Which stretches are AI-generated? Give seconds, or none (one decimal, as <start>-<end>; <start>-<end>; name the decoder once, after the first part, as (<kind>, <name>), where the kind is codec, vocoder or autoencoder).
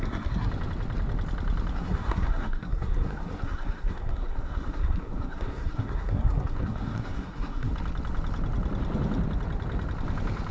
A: 0.0-0.5 (codec, SNAC); 1.7-7.7